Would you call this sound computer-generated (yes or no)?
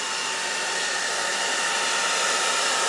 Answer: yes